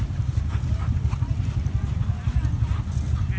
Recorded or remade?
recorded